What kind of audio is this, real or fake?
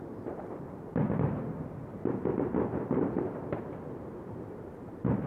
fake